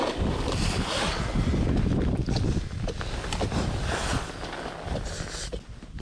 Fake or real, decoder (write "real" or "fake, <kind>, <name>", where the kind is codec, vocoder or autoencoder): real